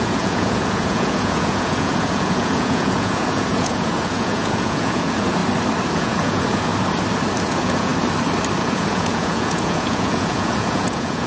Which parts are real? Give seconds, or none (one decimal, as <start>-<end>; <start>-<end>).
5.4-5.9; 6.7-7.4; 7.9-8.6

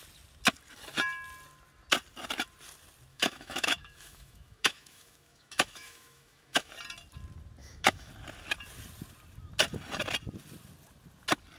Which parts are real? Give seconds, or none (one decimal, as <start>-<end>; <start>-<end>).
0.0-3.1; 6.7-7.6; 8.1-11.6

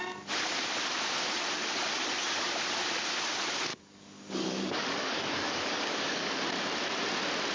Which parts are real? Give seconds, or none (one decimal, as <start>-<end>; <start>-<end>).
0.0-3.7; 6.4-7.5

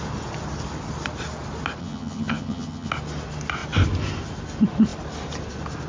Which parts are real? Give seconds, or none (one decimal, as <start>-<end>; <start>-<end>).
0.0-1.8; 2.9-5.9

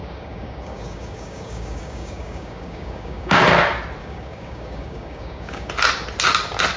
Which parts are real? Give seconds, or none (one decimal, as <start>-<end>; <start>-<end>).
3.4-4.0; 5.7-6.8

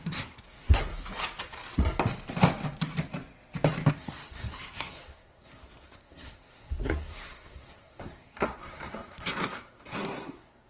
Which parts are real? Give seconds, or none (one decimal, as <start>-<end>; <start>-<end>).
0.9-3.9

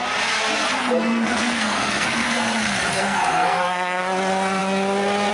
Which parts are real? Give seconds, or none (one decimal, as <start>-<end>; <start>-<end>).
0.0-0.8; 4.0-5.3

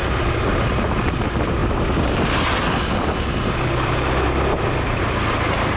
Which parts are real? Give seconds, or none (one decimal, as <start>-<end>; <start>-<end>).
0.0-5.8